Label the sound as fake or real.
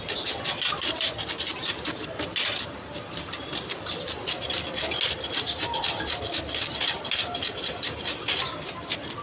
real